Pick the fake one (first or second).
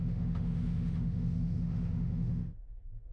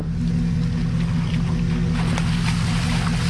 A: first